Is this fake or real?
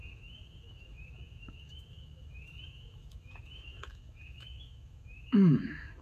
fake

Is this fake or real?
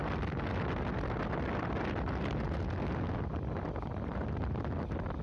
real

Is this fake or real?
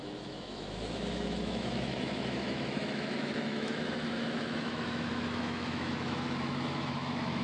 fake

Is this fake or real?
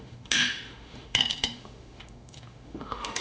fake